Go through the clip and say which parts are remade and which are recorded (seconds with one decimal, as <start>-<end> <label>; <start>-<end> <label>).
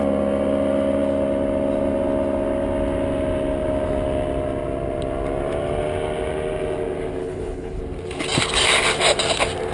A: 0.0-7.2 recorded; 7.2-7.8 remade; 7.8-9.7 recorded